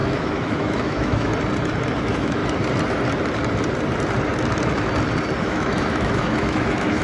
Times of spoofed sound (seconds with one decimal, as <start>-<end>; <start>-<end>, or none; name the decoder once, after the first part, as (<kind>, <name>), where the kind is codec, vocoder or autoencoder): 0.0-1.3 (autoencoder, DAC-VAE); 2.0-2.4; 5.4-7.0